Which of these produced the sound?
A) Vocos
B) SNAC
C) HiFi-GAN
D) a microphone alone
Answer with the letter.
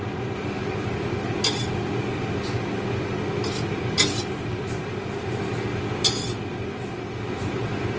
D